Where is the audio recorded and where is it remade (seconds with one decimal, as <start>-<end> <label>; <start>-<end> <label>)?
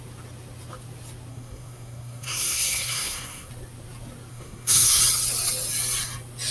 0.0-1.3 recorded; 1.3-3.5 remade; 3.5-4.3 recorded; 4.3-5.0 remade; 5.0-6.5 recorded